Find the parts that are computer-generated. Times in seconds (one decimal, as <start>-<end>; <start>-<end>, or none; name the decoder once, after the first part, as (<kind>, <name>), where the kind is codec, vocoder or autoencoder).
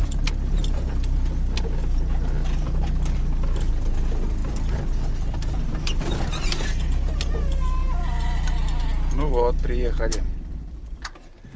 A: none